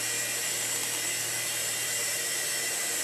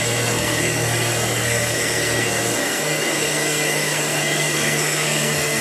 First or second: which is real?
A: first